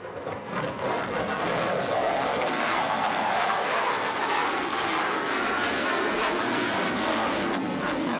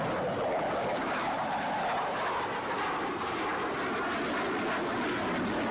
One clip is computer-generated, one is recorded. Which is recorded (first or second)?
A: second